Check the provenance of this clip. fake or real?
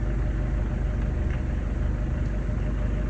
real